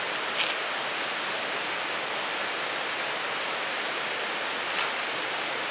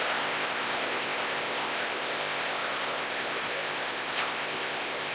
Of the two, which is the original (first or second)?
first